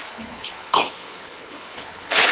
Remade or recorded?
remade